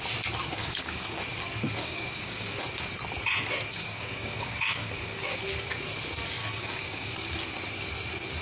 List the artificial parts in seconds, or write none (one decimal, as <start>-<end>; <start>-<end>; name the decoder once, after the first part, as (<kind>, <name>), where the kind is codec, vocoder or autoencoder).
0.6-1.2 (codec, DAC); 1.8-2.6; 3.7-5.4; 6.4-7.3